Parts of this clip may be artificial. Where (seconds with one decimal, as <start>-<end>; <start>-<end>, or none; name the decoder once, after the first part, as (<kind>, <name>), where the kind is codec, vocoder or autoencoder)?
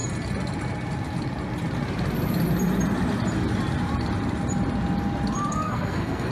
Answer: 5.5-6.3 (codec, SNAC)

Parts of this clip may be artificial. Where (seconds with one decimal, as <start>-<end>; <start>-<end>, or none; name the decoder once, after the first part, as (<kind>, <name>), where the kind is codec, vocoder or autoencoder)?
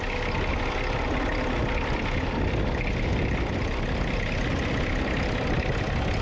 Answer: none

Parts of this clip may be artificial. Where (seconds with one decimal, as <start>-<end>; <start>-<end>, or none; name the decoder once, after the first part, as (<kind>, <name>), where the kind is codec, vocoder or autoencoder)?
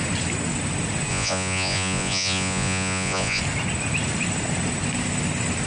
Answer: 1.1-3.4 (vocoder, Vocos)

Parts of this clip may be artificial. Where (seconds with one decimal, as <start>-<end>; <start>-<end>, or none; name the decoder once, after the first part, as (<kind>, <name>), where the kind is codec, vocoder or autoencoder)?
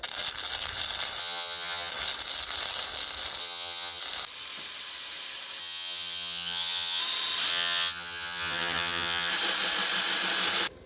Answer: 1.2-1.9 (vocoder, HiFi-GAN); 3.4-4.0; 5.6-7.0; 7.5-9.3